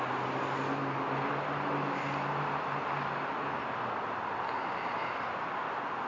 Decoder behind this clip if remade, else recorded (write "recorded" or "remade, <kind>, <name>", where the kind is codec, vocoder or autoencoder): recorded